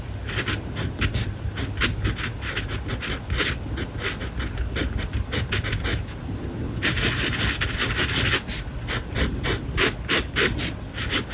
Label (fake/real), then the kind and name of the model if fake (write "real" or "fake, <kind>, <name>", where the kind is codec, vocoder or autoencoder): real